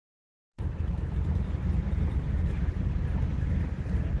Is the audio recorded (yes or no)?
yes